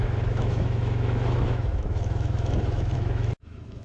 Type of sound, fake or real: fake